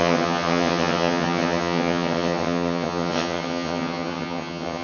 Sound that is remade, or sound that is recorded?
remade